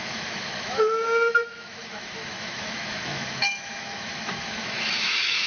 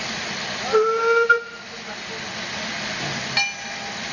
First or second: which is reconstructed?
first